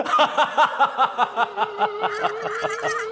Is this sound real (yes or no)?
yes